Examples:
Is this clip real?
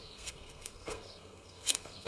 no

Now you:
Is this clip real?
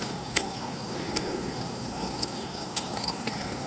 no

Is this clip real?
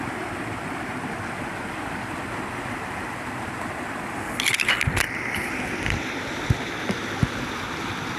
yes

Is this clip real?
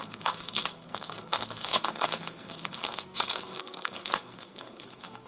no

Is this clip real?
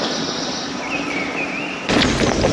yes